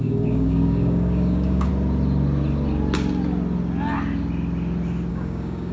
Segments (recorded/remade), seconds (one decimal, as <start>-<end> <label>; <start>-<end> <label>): 0.0-1.7 remade; 1.7-5.1 recorded; 5.1-5.7 remade

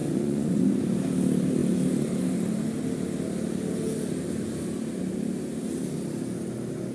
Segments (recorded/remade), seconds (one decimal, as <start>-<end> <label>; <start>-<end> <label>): 0.0-0.8 remade; 0.8-6.9 recorded

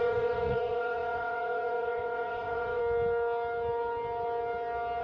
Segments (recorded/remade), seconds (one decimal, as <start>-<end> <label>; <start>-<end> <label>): 0.0-2.8 remade; 2.8-5.0 recorded

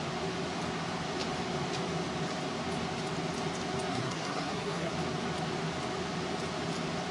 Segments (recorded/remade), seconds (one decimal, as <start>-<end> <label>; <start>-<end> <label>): 0.0-3.9 recorded; 3.9-4.9 remade; 4.9-7.1 recorded